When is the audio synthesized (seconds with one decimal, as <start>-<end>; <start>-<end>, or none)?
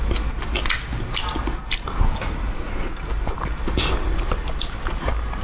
none